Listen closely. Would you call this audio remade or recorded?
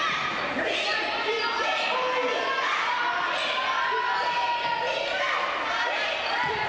recorded